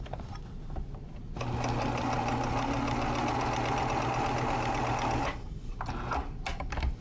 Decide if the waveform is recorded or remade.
recorded